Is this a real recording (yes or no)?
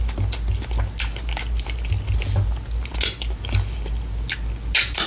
yes